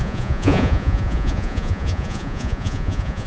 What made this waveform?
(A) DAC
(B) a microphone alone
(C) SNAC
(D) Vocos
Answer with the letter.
D